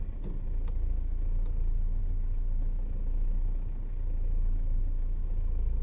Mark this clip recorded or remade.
recorded